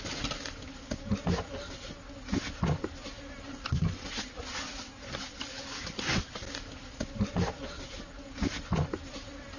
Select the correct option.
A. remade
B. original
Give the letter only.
B